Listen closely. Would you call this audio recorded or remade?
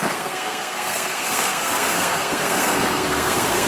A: remade